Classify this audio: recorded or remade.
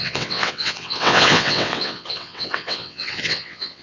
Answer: remade